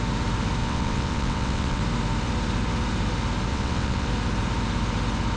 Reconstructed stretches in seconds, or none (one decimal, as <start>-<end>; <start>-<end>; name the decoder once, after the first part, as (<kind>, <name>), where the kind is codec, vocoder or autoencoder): 0.6-1.8 (vocoder, WaveNeXt); 3.5-4.1